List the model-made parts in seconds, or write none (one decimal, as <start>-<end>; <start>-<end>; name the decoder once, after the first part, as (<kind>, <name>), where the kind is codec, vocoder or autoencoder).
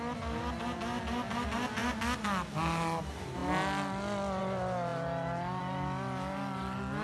none